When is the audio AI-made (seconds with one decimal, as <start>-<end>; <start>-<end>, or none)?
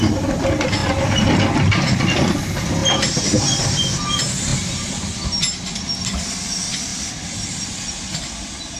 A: 6.9-8.1